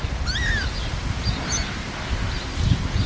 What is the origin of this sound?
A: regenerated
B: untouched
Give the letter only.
B